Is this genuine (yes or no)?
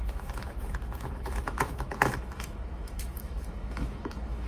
no